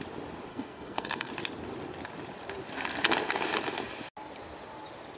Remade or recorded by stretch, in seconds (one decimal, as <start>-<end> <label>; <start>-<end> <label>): 0.0-0.5 recorded; 0.5-1.3 remade; 1.3-5.2 recorded